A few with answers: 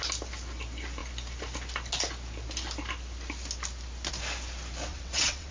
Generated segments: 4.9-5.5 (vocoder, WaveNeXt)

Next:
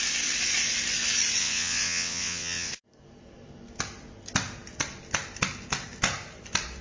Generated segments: 1.4-2.7 (vocoder, WaveNeXt)

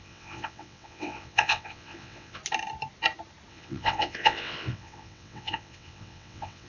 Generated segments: 0.0-2.4 (vocoder, WaveNeXt); 3.5-6.7

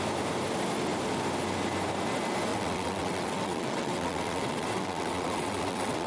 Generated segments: 2.5-6.1 (vocoder, WaveNeXt)

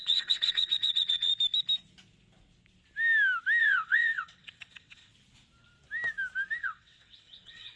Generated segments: 0.0-1.3 (vocoder, WaveNeXt); 3.6-5.1; 6.6-7.8

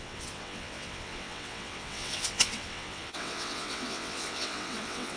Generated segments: 0.0-5.2 (vocoder, WaveNeXt)

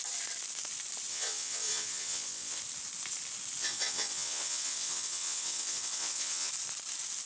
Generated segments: 1.1-2.6 (vocoder, WaveNeXt); 3.6-6.5